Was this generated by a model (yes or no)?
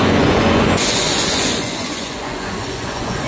yes